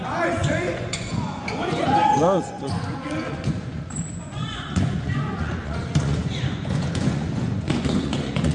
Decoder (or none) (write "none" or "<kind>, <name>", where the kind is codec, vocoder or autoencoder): vocoder, Vocos